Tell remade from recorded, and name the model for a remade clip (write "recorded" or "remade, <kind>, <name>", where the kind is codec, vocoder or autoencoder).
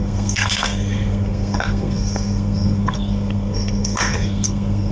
remade, codec, SNAC